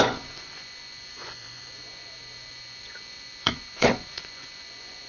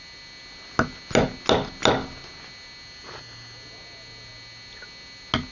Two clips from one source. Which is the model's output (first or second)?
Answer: first